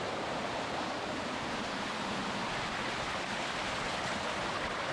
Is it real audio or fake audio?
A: real